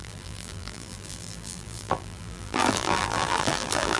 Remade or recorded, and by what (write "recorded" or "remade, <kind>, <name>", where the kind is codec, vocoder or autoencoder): remade, vocoder, BigVGAN v2